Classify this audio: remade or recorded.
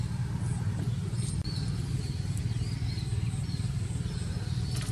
recorded